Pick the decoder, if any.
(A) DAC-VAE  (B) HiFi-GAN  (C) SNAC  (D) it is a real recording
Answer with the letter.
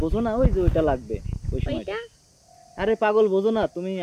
D